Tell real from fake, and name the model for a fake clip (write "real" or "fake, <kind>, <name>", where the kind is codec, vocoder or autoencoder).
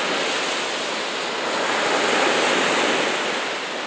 real